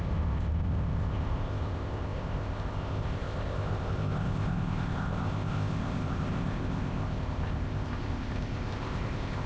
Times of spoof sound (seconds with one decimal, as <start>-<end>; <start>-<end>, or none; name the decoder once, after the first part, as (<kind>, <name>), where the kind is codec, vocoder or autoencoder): 0.0-9.5 (codec, ZipCodec)